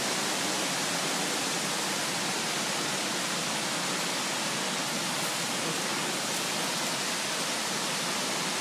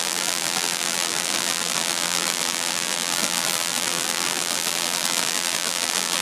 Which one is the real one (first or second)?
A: first